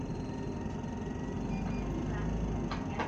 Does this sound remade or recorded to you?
recorded